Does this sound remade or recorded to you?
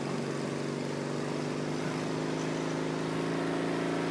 recorded